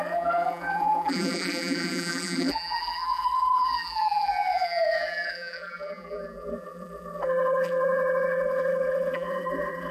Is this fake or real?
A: fake